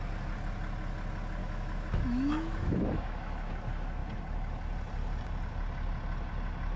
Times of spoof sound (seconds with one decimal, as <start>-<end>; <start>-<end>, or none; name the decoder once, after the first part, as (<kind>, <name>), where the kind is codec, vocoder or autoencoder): 1.4-3.5 (autoencoder, DAC-VAE)